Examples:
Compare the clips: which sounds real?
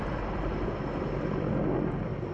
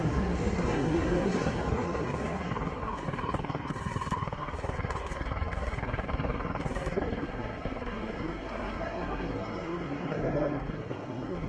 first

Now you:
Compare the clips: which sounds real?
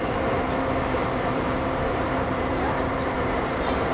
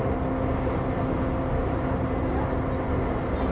second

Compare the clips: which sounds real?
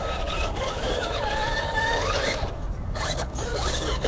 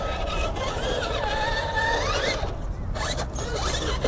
second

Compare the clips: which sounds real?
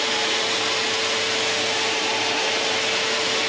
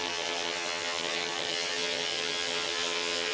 first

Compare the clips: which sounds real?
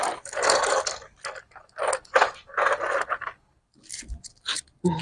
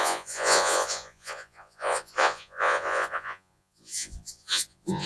first